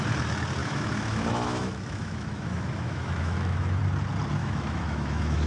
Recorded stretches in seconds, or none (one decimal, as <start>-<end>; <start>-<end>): 0.0-0.6; 3.8-4.4

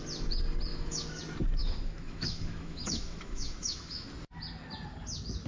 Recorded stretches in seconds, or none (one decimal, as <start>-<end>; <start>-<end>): 0.0-0.7; 1.2-1.6; 4.1-5.5

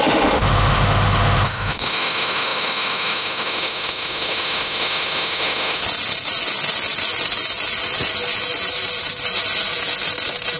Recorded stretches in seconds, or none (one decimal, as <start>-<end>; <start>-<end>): 5.8-10.6

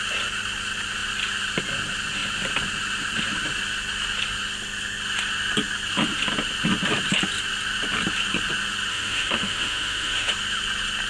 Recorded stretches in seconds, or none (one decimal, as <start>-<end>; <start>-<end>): 0.0-8.9; 10.3-11.1